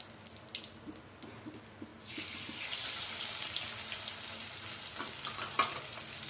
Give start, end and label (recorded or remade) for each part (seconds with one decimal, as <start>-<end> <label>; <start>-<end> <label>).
0.0-6.3 recorded